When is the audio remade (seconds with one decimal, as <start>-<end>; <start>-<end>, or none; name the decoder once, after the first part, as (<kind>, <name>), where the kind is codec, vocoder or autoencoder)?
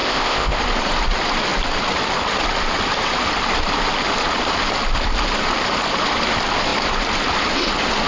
0.0-0.6 (codec, ZipCodec)